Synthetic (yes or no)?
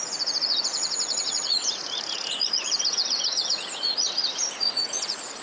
yes